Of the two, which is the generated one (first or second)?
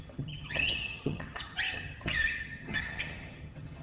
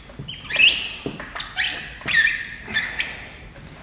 first